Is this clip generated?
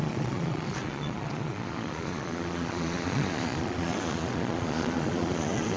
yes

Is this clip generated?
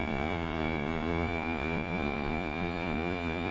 yes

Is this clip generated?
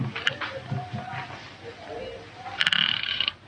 no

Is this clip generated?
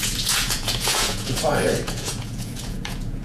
yes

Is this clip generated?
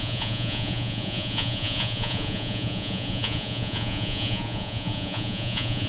yes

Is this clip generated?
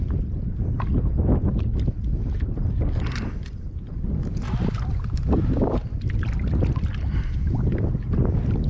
no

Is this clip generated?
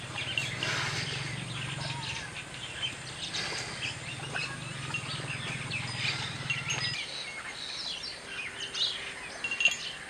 no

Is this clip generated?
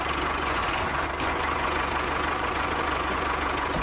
yes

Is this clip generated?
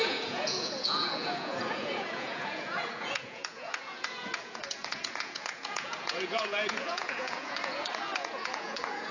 yes